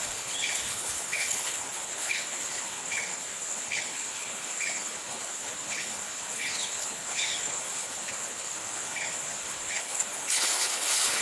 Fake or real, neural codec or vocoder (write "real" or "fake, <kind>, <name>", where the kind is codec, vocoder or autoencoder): fake, codec, HILCodec